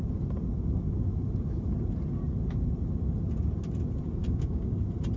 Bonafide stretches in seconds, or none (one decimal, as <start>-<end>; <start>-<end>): 0.0-4.2; 4.8-5.2